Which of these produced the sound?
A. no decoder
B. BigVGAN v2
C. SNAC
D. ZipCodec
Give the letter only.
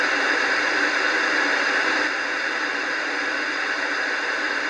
A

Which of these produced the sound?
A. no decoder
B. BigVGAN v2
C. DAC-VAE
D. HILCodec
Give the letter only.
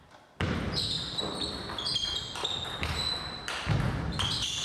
A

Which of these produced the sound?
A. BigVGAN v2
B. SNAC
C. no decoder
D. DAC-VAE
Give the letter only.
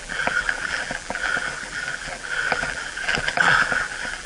A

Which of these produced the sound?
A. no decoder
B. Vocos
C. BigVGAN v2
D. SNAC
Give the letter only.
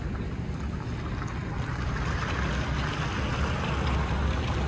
A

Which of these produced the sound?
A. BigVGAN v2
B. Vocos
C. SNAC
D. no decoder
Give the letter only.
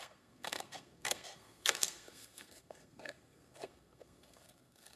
C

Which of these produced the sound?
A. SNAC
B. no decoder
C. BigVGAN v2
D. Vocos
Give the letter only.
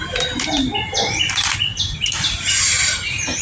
B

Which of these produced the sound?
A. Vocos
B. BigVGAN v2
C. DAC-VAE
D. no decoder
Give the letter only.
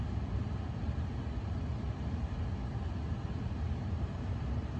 D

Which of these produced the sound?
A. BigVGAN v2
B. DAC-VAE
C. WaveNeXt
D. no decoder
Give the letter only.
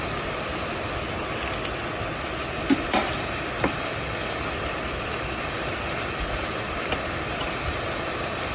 D